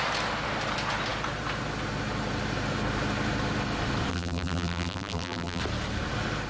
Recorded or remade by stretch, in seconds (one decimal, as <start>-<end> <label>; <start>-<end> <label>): 0.0-4.1 recorded; 4.1-5.6 remade; 5.6-6.5 recorded